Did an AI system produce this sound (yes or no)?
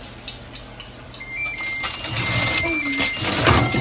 no